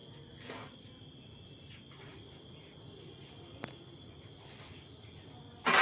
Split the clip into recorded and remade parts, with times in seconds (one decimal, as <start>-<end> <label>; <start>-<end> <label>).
0.0-5.8 recorded